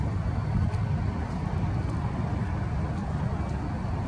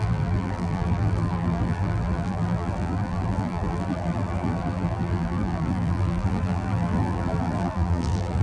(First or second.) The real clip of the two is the first